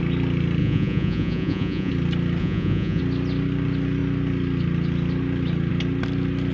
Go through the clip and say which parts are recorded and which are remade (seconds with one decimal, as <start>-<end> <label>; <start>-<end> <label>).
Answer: 0.0-0.6 recorded; 0.6-1.9 remade; 1.9-2.4 recorded; 2.4-3.0 remade; 3.0-6.5 recorded